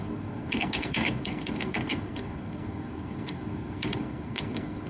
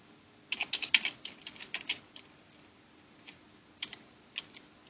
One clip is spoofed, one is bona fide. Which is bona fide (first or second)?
second